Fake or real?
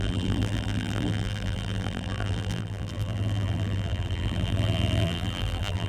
fake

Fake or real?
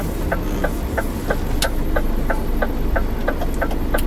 real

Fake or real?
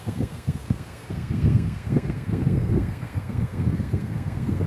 fake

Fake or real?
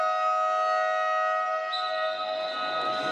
real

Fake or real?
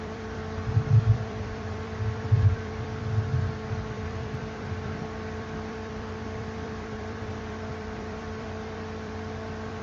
fake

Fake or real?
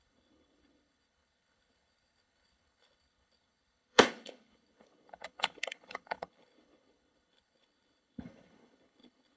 fake